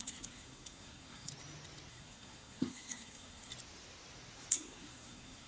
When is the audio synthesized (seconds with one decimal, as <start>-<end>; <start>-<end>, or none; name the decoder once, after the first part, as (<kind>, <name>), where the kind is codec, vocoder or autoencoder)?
0.0-1.3 (codec, SNAC); 1.9-3.5; 4.5-5.5